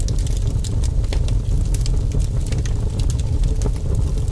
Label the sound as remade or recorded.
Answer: recorded